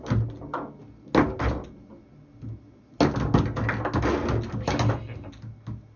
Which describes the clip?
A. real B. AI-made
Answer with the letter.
A